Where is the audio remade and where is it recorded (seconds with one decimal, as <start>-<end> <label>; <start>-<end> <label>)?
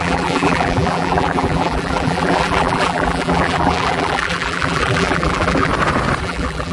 0.0-5.7 remade; 5.7-6.2 recorded; 6.2-6.7 remade